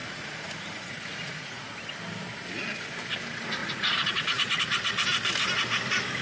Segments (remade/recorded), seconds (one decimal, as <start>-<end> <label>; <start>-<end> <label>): 0.0-1.7 remade; 1.7-3.6 recorded; 3.6-4.6 remade; 4.6-6.2 recorded